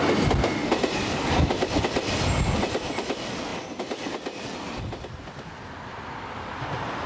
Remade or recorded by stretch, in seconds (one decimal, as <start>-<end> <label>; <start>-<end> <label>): 0.0-7.1 recorded

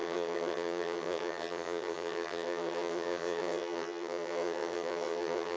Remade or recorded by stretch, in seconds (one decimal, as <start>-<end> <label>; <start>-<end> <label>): 0.0-5.6 remade

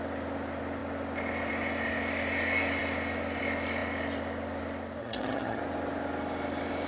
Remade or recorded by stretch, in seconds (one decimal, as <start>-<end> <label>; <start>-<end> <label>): 0.0-5.0 recorded; 5.0-5.6 remade; 5.6-6.9 recorded

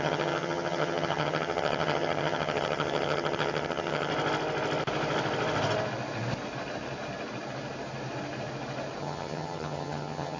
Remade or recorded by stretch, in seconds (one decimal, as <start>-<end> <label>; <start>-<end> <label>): 0.0-4.1 remade; 4.1-9.0 recorded; 9.0-10.4 remade

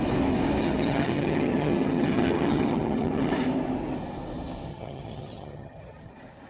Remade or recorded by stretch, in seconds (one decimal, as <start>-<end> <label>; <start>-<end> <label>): 0.0-0.6 recorded; 0.6-3.3 remade; 3.3-4.7 recorded; 4.7-6.1 remade; 6.1-6.5 recorded